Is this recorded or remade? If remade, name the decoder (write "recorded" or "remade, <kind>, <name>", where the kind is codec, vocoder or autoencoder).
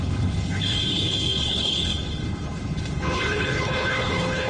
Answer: remade, codec, HILCodec